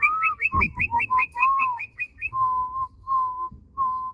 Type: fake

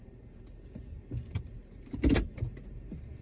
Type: fake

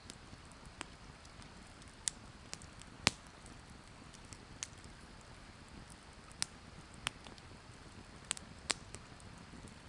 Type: real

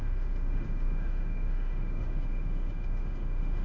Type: fake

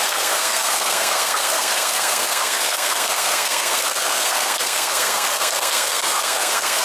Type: fake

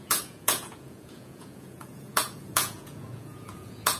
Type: fake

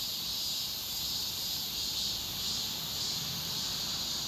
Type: fake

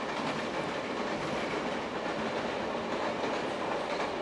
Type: real